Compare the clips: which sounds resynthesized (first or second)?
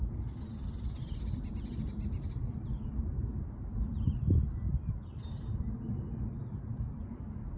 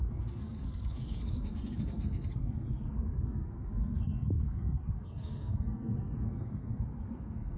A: second